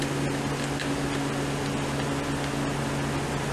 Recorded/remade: recorded